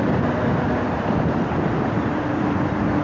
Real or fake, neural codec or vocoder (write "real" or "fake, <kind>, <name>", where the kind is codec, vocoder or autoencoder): fake, vocoder, BigVGAN v2